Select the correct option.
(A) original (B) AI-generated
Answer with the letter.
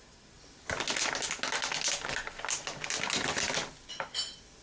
A